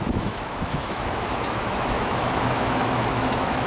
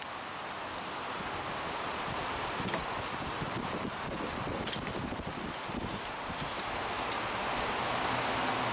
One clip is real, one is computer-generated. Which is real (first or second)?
second